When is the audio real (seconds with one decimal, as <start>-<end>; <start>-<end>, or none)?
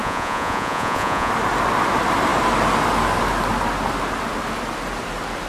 1.3-5.5